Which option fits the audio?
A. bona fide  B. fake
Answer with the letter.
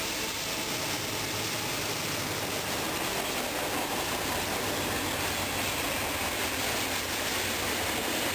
A